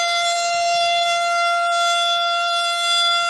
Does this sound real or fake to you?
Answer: fake